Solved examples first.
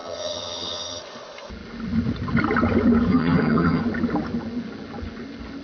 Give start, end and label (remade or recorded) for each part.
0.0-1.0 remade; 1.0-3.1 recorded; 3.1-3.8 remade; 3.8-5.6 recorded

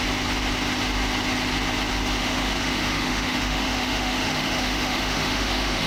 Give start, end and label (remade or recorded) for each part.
0.0-2.2 recorded; 2.2-5.9 remade